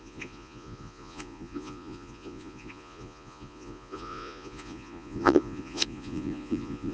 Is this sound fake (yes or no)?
yes